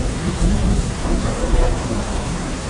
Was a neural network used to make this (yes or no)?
yes